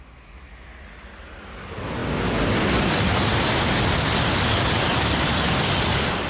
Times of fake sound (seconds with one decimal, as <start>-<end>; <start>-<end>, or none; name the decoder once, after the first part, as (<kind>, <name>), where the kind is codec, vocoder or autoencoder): none